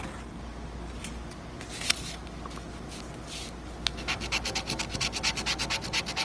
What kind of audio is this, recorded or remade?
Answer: recorded